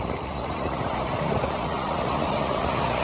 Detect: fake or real fake